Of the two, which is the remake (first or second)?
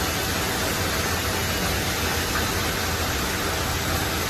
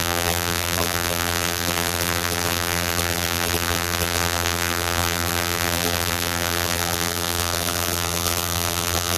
second